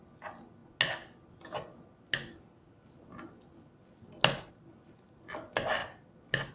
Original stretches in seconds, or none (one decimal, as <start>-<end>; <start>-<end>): 0.0-6.5

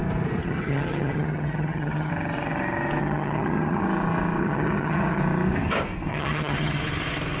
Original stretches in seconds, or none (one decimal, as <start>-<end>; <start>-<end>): 0.0-0.4; 2.1-3.0; 3.8-4.4; 5.2-6.1; 6.8-7.4